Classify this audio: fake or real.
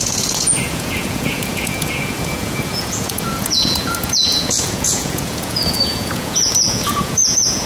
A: fake